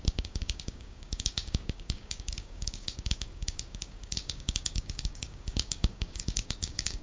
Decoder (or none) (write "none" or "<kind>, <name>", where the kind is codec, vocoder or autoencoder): codec, DAC